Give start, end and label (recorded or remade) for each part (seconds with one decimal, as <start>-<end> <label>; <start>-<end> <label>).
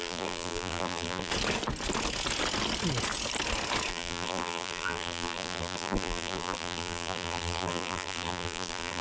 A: 0.0-1.3 remade; 1.3-3.9 recorded; 3.9-9.0 remade